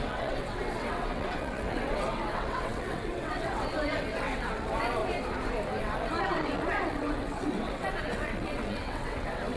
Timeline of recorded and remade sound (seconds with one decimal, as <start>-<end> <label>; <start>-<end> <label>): 0.0-5.0 remade; 5.0-5.8 recorded; 5.8-9.6 remade